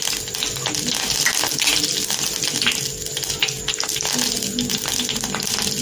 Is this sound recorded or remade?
recorded